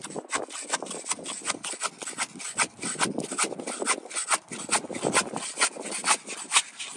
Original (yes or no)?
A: yes